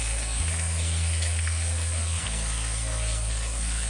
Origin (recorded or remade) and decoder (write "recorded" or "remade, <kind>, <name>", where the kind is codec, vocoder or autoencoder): remade, codec, SNAC